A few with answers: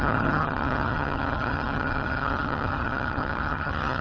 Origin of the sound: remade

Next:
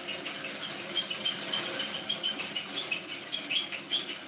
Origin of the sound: recorded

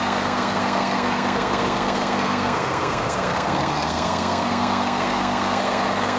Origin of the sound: remade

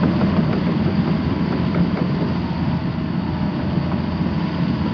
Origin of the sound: recorded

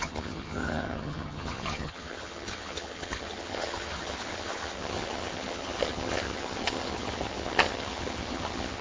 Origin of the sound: remade